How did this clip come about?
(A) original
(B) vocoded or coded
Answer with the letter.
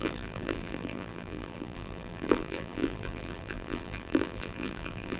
B